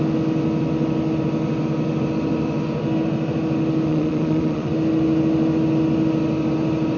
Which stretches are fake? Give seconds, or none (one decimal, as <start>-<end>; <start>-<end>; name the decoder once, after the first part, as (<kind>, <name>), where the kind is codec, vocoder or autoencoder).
3.9-4.7 (vocoder, Vocos)